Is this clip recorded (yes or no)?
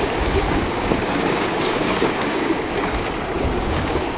no